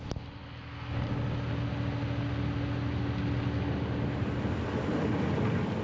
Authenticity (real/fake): real